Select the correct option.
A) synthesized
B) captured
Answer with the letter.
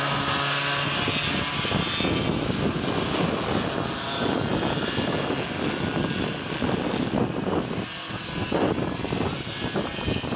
B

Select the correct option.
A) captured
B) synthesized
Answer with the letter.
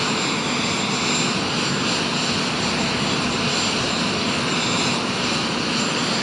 A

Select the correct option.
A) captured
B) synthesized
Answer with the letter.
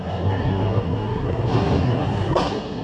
B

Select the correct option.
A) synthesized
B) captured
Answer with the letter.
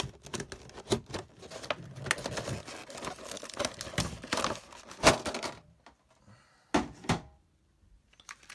B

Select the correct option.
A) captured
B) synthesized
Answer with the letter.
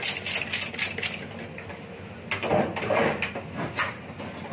A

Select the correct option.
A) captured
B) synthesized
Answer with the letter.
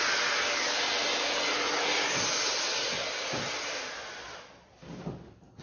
A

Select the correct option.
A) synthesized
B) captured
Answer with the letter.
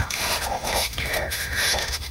A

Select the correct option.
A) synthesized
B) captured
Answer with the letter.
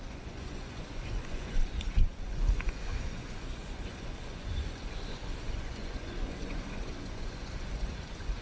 A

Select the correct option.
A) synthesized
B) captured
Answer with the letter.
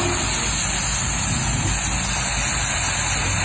B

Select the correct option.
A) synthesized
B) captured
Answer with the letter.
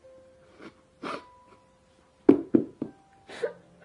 B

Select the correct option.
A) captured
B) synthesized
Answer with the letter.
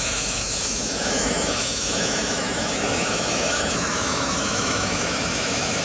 B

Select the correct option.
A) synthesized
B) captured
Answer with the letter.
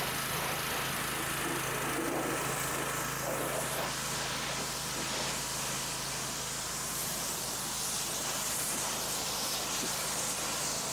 B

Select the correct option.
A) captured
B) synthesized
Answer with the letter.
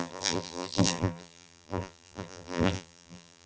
B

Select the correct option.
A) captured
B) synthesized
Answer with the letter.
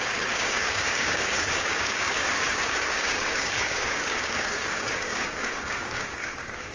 B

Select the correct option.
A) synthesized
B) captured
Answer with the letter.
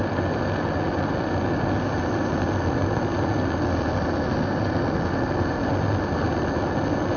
B